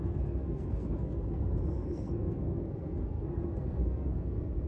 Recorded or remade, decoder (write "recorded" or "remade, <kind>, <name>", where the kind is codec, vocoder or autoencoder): remade, codec, SNAC